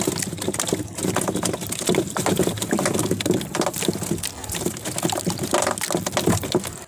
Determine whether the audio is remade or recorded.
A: recorded